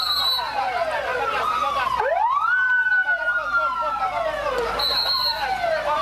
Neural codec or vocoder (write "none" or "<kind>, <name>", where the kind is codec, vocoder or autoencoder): none